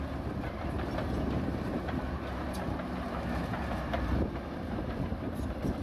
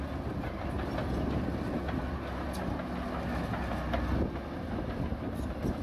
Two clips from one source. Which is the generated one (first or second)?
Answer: first